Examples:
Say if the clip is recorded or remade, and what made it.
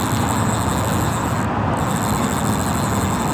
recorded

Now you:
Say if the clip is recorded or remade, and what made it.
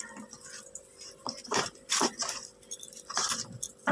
remade, vocoder, BigVGAN v2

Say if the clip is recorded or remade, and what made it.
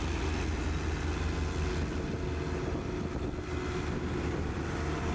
recorded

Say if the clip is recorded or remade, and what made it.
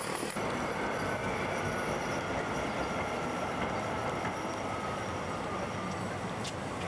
recorded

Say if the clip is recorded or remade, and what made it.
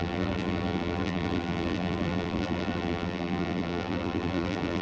remade, vocoder, BigVGAN v2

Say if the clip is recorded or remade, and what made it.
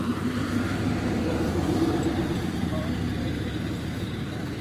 remade, vocoder, BigVGAN v2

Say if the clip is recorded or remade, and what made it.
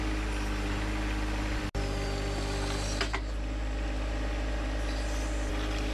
recorded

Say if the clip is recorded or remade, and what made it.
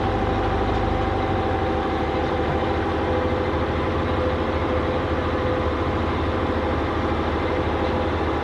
recorded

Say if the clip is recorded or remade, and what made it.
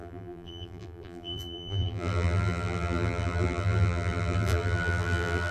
remade, vocoder, BigVGAN v2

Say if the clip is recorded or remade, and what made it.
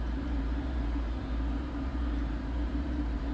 remade, vocoder, BigVGAN v2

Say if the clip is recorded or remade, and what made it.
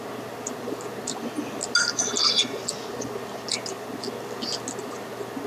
recorded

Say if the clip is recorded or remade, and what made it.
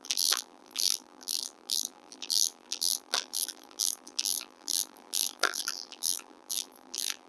remade, vocoder, BigVGAN v2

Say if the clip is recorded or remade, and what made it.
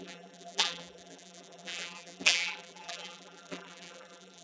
remade, vocoder, BigVGAN v2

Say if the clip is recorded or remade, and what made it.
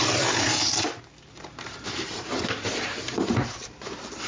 remade, vocoder, BigVGAN v2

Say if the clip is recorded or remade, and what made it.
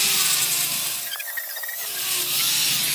recorded